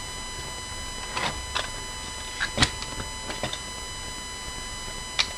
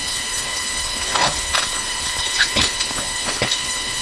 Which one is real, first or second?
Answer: first